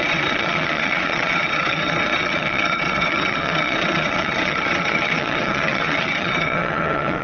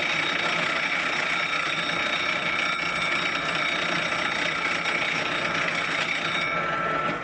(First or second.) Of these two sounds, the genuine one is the second